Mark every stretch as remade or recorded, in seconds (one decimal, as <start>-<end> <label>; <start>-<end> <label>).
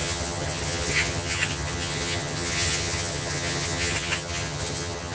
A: 0.0-5.1 remade